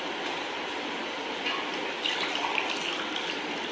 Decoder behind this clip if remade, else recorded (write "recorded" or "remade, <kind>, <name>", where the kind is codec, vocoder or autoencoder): recorded